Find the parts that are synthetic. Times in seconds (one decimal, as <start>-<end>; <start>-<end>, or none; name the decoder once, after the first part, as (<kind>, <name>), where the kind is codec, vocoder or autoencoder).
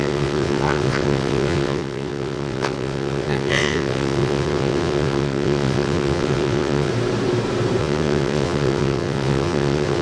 0.0-6.9 (vocoder, WaveNeXt); 7.8-10.0